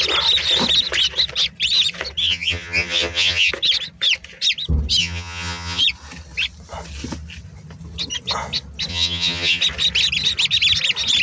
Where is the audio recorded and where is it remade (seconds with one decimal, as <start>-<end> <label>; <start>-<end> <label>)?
0.0-2.2 recorded; 2.2-3.5 remade; 3.5-5.0 recorded; 5.0-5.8 remade; 5.8-8.9 recorded; 8.9-9.6 remade; 9.6-11.2 recorded